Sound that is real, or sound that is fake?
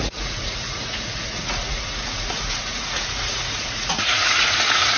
fake